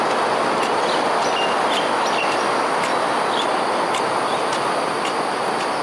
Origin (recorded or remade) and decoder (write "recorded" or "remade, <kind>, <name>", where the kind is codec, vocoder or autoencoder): recorded